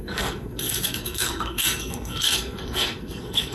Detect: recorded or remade remade